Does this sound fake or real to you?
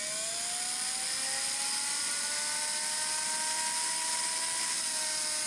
real